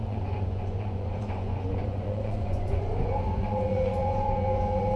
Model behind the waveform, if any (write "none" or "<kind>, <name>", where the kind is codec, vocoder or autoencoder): vocoder, Vocos